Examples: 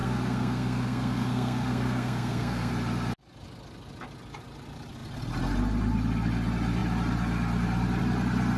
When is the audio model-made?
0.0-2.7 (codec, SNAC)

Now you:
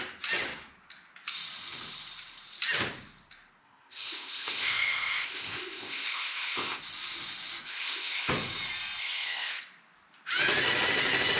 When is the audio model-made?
3.6-6.8 (codec, ZipCodec); 7.7-8.3; 9.0-9.6

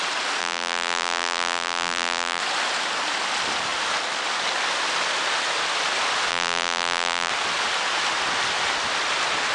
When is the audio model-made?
0.4-2.4 (vocoder, BigVGAN v2); 6.3-7.3

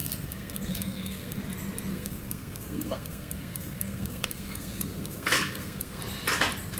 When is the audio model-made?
0.0-1.4 (codec, SNAC); 1.9-6.0